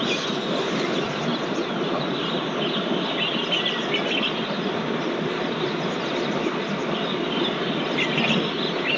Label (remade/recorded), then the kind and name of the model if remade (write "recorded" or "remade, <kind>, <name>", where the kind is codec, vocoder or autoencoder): recorded